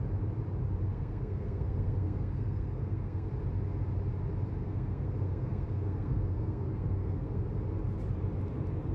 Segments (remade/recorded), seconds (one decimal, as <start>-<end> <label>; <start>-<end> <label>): 0.0-0.9 recorded; 0.9-3.3 remade; 3.3-4.6 recorded; 4.6-7.4 remade; 7.4-8.9 recorded